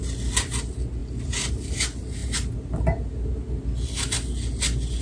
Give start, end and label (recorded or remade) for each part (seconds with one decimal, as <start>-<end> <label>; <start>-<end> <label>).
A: 0.0-5.0 recorded